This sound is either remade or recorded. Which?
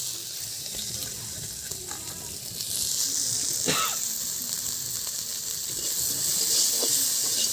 recorded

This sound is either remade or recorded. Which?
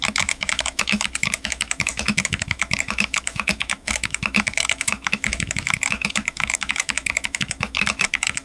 remade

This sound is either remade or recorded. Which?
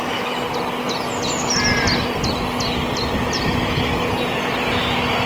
recorded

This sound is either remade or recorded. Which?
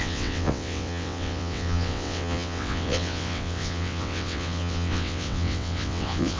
remade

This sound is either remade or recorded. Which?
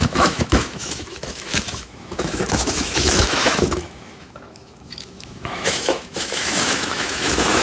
remade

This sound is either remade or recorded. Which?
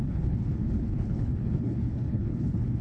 remade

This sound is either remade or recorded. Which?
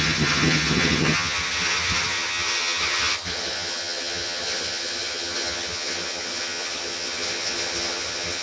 remade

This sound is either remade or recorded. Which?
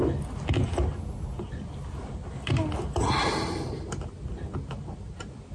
recorded